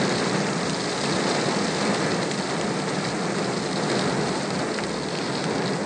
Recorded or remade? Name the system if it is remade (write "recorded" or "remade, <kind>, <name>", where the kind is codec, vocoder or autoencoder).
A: recorded